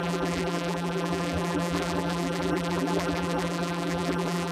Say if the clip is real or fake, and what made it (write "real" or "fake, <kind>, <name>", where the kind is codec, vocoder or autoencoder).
fake, vocoder, BigVGAN v2